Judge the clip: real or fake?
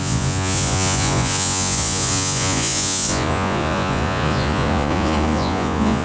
fake